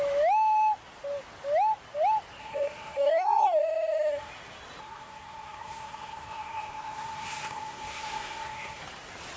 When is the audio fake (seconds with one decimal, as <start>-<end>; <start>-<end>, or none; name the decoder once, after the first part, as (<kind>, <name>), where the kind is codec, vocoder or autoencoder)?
2.4-4.3 (codec, SNAC); 4.8-8.8